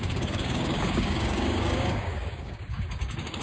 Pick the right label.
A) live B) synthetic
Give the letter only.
B